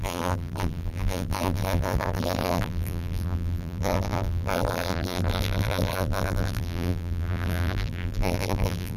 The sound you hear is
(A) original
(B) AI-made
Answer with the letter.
B